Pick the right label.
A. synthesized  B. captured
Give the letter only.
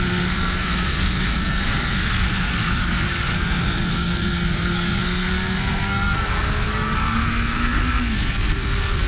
A